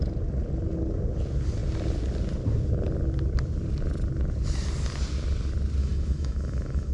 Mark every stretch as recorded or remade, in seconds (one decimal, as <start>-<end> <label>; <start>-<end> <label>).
0.0-5.8 recorded; 5.8-6.9 remade